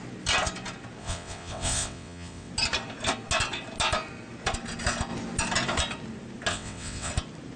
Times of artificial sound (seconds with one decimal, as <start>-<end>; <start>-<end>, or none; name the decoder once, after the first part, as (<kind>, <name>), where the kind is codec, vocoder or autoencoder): 1.0-2.5 (vocoder, WaveNeXt); 6.5-7.1